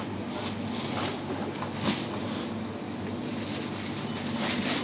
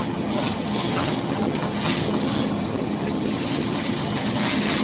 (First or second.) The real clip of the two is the first